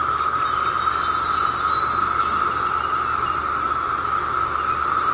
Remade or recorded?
recorded